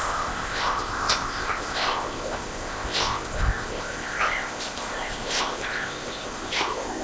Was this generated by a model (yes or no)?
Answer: yes